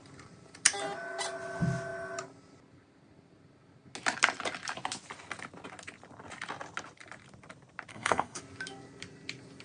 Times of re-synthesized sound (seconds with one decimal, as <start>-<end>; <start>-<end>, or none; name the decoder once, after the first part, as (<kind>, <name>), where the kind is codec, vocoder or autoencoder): 7.9-8.4 (codec, SNAC)